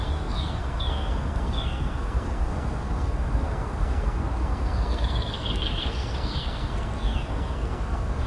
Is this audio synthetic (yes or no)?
yes